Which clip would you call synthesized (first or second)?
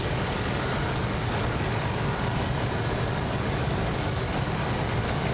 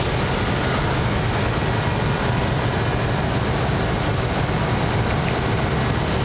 first